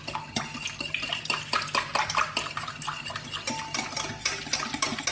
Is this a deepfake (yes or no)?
no